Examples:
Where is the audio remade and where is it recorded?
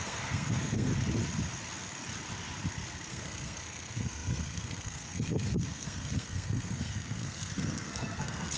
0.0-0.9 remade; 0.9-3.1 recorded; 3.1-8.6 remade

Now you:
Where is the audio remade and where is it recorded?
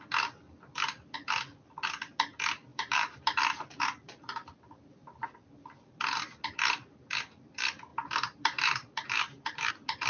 0.0-2.7 recorded; 2.7-3.4 remade; 3.4-7.9 recorded; 7.9-9.7 remade; 9.7-10.1 recorded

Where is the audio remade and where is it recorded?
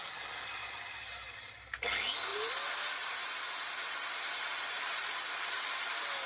0.0-2.3 recorded; 2.3-3.5 remade; 3.5-6.3 recorded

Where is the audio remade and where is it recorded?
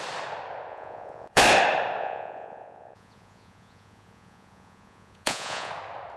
0.0-0.7 recorded; 0.7-1.4 remade; 1.4-2.0 recorded; 2.0-5.7 remade; 5.7-6.2 recorded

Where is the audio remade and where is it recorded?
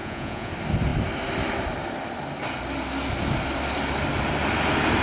0.0-0.5 remade; 0.5-5.0 recorded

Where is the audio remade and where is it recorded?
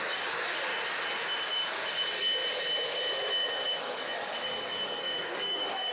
0.0-0.7 remade; 0.7-1.5 recorded; 1.5-2.4 remade; 2.4-3.8 recorded; 3.8-5.9 remade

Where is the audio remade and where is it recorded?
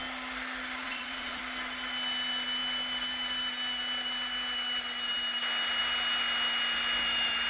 0.0-0.8 recorded; 0.8-1.4 remade; 1.4-7.5 recorded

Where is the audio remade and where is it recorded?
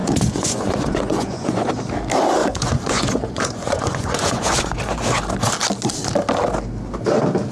0.0-1.7 remade; 1.7-2.4 recorded; 2.4-4.8 remade; 4.8-7.5 recorded